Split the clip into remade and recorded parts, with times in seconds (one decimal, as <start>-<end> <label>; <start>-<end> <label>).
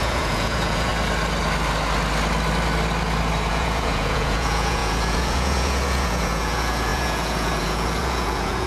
0.0-0.9 remade; 0.9-3.5 recorded; 3.5-8.7 remade